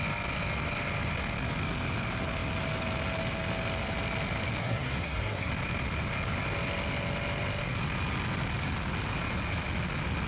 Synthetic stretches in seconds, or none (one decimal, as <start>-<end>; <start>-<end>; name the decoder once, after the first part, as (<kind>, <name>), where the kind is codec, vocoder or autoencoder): 4.6-5.5 (codec, SNAC)